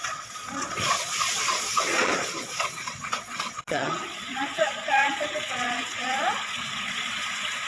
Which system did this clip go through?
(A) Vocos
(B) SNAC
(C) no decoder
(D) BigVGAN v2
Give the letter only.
A